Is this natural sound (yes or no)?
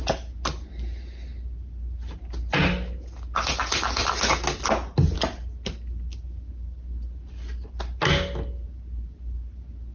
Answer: yes